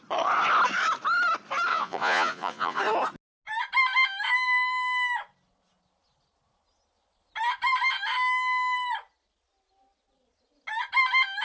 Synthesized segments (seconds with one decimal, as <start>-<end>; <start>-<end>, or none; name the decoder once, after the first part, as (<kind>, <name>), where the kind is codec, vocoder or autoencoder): 1.7-2.8 (vocoder, Vocos)

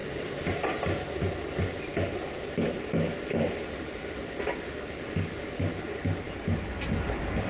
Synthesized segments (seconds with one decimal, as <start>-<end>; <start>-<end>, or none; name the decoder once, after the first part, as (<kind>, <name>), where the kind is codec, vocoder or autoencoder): none

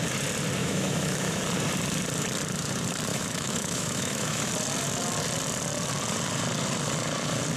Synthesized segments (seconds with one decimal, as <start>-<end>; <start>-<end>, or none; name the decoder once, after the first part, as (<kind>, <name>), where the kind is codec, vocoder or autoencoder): 0.6-1.4 (autoencoder, DAC-VAE); 3.1-4.5

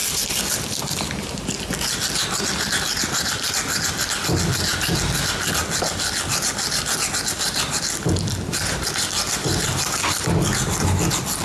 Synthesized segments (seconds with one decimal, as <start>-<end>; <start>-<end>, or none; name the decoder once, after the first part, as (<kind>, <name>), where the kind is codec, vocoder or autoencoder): none

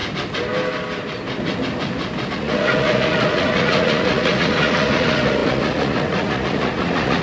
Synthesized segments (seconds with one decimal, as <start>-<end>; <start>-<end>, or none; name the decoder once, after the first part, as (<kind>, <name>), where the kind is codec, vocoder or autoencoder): 2.3-7.2 (vocoder, Vocos)

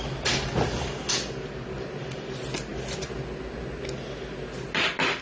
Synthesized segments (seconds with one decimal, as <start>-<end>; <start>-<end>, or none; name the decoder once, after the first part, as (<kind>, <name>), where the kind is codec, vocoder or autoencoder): none

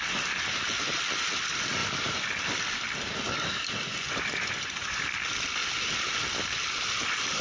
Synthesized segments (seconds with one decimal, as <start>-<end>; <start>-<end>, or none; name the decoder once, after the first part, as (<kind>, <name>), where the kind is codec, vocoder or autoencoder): 3.9-5.0 (vocoder, Vocos)

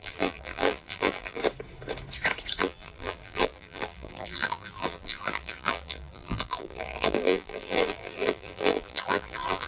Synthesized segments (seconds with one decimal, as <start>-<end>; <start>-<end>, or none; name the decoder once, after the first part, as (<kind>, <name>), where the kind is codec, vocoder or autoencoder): 0.0-1.4 (vocoder, BigVGAN v2); 2.6-9.7